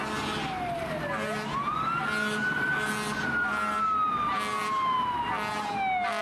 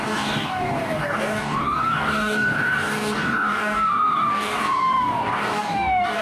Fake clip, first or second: second